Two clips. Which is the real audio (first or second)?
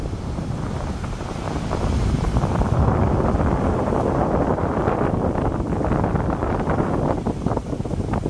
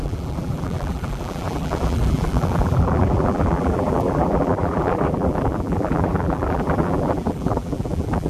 first